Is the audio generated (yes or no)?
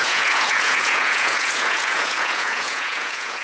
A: yes